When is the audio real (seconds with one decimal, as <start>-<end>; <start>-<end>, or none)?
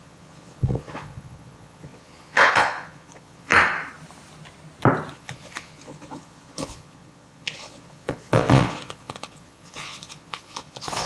3.5-5.1